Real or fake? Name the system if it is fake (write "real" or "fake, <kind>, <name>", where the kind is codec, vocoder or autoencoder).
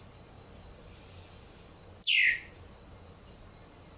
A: real